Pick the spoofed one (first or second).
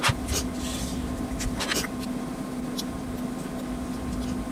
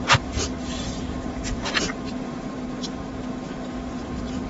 second